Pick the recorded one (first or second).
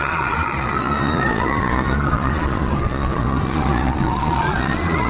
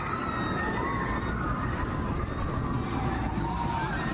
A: second